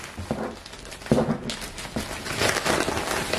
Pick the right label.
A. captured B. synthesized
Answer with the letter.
A